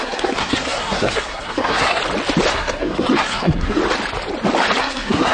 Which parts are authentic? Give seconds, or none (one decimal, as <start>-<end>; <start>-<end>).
2.0-2.5; 3.8-4.8